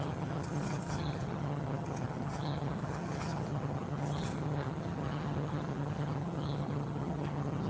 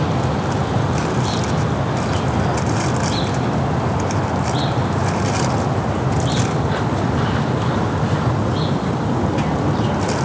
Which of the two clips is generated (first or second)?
first